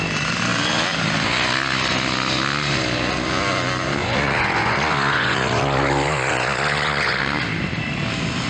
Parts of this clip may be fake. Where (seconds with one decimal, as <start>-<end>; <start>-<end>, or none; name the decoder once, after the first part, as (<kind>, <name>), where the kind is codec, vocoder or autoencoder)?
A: 4.0-7.2 (vocoder, Vocos)